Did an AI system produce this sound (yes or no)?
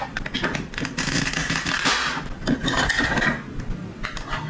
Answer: no